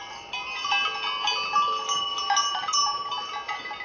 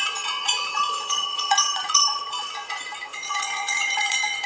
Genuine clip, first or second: first